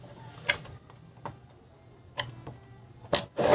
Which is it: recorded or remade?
recorded